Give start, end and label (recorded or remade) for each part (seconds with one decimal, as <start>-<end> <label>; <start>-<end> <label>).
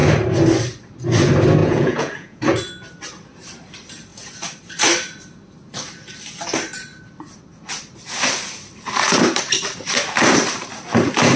0.0-1.6 recorded; 1.6-2.4 remade; 2.4-11.4 recorded